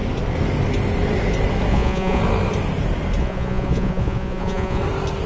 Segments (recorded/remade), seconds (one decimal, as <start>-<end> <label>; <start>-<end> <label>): 0.0-1.7 recorded; 1.7-2.2 remade; 2.2-3.2 recorded; 3.2-4.8 remade; 4.8-5.3 recorded